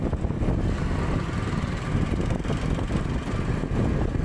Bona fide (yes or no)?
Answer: yes